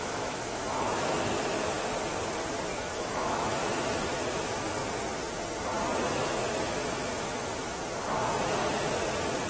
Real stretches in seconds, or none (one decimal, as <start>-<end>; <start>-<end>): 1.2-2.7; 3.6-6.4; 7.7-9.5